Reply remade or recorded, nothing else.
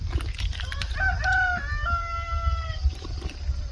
recorded